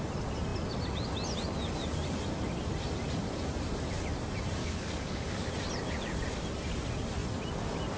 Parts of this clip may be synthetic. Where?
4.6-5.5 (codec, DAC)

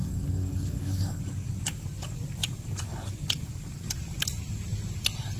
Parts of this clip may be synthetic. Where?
0.0-1.2 (codec, SNAC)

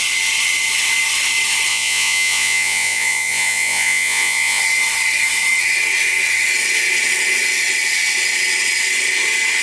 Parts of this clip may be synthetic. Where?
1.7-4.6 (vocoder, Vocos)

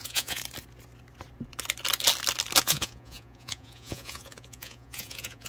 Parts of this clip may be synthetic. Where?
0.0-0.4 (vocoder, Vocos); 2.6-5.5

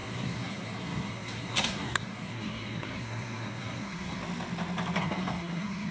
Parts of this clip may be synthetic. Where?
0.0-4.2 (codec, SNAC); 5.0-5.9

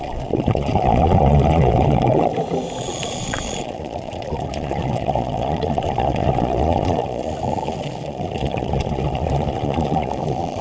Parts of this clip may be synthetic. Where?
0.0-2.3 (vocoder, Vocos); 2.8-10.6

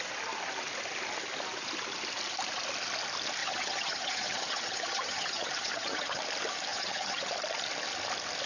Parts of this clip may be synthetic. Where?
3.4-6.2 (vocoder, HiFi-GAN); 6.7-7.3